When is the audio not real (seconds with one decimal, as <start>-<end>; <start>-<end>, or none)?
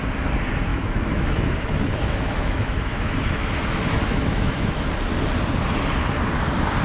0.7-4.8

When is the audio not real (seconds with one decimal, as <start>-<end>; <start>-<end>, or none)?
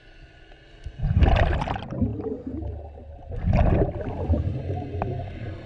none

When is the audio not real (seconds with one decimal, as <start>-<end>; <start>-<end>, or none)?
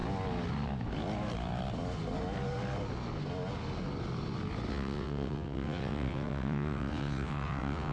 4.7-7.9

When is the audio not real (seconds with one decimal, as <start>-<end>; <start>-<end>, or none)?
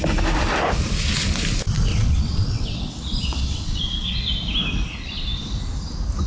1.9-4.1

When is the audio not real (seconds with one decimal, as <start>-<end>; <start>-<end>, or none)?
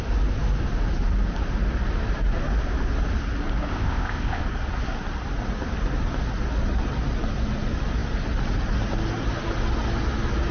3.7-4.4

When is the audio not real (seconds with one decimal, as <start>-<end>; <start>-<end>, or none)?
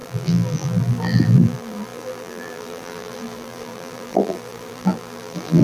0.0-5.6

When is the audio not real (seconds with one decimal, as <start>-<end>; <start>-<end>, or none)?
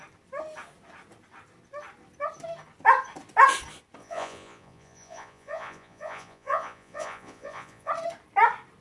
4.0-7.9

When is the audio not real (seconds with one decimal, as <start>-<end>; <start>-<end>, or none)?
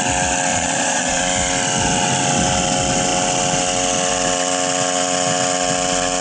0.5-1.2